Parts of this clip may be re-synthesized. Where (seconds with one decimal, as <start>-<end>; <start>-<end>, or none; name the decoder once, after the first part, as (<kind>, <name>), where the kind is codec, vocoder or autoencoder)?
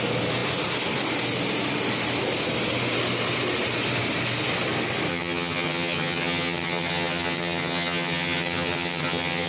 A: 5.1-9.5 (vocoder, HiFi-GAN)